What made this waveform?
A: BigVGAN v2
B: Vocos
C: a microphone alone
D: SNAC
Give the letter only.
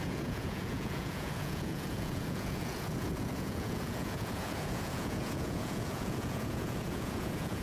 B